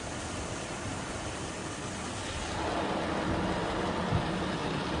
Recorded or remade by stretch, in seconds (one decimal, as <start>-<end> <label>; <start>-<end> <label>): 0.0-5.0 recorded